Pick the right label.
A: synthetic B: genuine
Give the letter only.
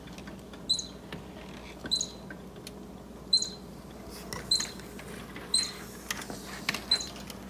B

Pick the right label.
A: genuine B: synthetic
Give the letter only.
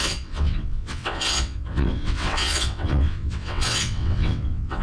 B